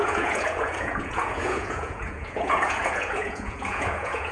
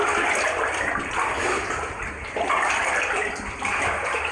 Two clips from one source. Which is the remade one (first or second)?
first